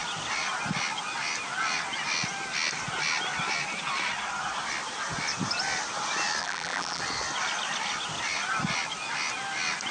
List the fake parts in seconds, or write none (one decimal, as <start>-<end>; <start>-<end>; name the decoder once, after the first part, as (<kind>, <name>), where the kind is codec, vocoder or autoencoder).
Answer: 6.4-7.0 (vocoder, BigVGAN v2)